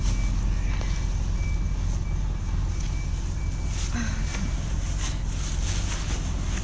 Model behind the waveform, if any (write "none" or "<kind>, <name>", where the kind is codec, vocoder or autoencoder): none